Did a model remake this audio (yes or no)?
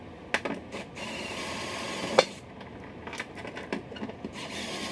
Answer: no